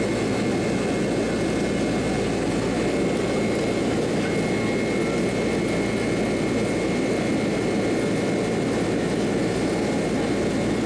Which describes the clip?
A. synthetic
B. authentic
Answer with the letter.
B